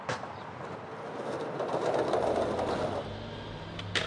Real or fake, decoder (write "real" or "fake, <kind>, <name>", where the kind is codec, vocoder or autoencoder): real